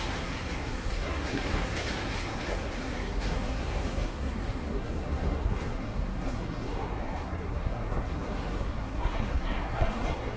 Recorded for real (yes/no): no